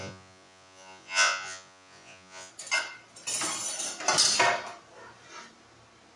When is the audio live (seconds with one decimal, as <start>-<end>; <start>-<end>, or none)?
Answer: 2.5-6.2

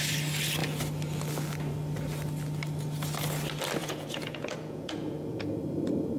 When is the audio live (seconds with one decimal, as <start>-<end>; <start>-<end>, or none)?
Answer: 0.0-3.8; 5.6-6.2

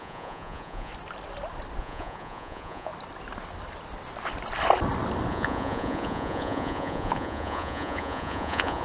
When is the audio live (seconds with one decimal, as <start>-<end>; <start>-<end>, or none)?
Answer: 0.9-1.8; 2.9-5.3

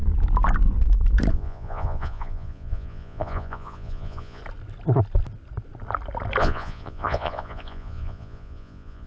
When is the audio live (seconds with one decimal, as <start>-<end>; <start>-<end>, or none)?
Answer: 0.0-1.3; 4.4-6.4